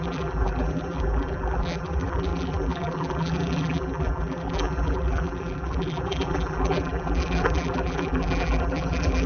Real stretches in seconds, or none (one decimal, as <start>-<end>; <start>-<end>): none